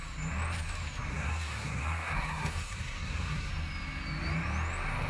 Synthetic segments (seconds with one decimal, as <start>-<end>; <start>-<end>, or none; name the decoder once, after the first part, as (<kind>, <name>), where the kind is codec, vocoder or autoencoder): 1.1-3.5 (codec, SNAC)